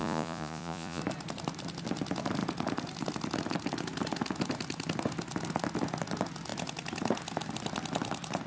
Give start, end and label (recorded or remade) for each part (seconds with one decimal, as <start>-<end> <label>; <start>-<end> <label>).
0.0-1.0 remade; 1.0-8.5 recorded